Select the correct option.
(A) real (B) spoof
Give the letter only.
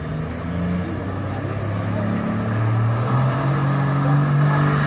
A